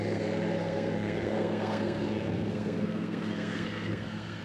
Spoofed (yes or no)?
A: yes